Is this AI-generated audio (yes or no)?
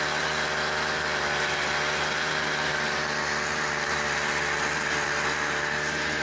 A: no